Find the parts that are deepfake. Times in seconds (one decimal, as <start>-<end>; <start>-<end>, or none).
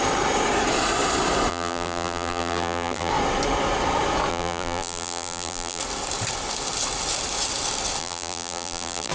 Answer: 1.5-3.1; 4.3-5.8; 8.0-9.1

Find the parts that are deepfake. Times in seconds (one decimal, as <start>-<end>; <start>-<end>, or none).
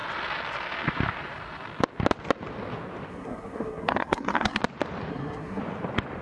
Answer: 3.1-4.6; 5.1-5.6